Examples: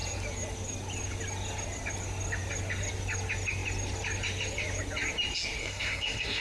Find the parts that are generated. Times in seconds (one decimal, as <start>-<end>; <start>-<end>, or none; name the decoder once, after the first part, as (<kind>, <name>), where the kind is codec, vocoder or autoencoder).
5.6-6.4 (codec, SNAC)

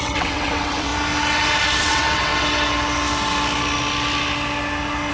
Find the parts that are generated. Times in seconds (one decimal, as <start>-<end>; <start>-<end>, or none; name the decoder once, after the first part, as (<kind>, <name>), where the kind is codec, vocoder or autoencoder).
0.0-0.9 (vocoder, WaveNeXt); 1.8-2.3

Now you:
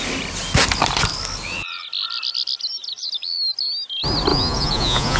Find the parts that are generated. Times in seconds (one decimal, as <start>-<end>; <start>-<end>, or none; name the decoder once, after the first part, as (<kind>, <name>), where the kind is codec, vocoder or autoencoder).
4.3-5.2 (vocoder, Vocos)

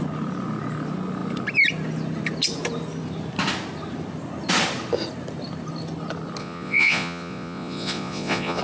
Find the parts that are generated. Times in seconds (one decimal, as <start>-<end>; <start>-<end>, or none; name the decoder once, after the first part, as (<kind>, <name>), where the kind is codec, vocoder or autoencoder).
6.4-8.6 (vocoder, Vocos)